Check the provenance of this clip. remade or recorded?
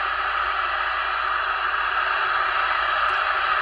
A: recorded